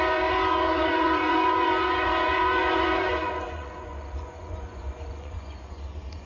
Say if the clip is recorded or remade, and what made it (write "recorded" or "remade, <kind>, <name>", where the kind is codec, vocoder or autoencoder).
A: remade, vocoder, Vocos